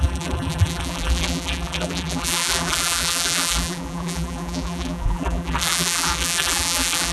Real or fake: fake